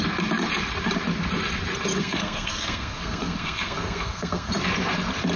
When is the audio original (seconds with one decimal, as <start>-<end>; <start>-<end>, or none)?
0.0-2.0; 4.5-5.4